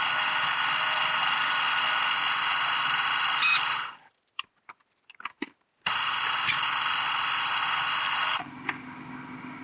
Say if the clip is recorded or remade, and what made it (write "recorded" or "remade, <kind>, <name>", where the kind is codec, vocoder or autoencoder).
recorded